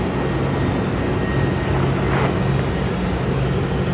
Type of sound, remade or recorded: recorded